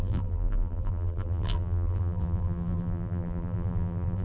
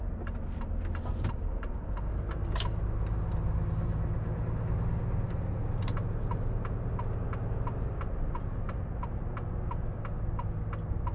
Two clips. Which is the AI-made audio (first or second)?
first